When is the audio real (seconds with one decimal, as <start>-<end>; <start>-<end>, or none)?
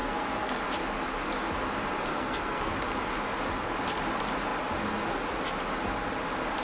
0.6-2.1; 2.7-6.6